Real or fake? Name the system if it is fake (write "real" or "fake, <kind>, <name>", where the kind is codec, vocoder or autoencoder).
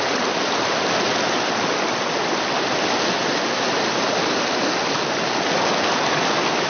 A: real